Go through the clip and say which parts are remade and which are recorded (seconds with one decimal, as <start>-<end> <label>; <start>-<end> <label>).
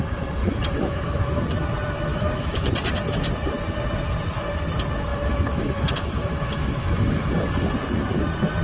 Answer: 0.0-0.4 recorded; 0.4-1.4 remade; 1.4-2.1 recorded; 2.1-2.7 remade; 2.7-5.1 recorded; 5.1-7.3 remade; 7.3-8.6 recorded